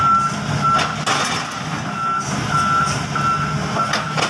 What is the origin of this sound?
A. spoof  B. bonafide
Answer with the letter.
B